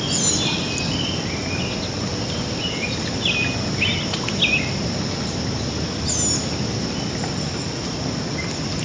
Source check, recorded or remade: recorded